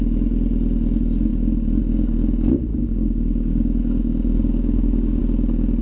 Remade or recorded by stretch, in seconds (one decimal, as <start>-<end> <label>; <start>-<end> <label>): 0.0-2.7 recorded; 2.7-5.2 remade; 5.2-5.8 recorded